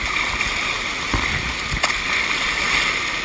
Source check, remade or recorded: recorded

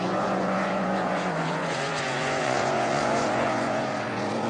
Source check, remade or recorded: remade